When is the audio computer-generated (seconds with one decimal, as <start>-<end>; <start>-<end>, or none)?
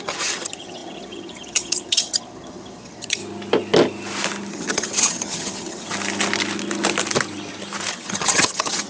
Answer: 0.0-3.2; 4.5-5.9; 7.9-8.9